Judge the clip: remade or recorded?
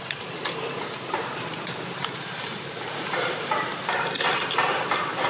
remade